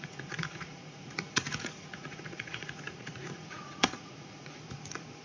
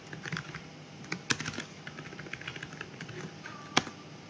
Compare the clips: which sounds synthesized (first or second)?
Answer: first